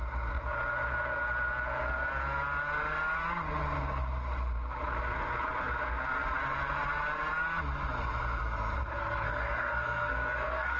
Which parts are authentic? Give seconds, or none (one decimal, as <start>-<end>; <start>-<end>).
0.0-9.0